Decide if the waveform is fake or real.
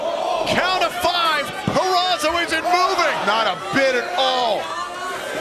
real